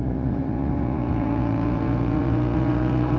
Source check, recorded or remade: remade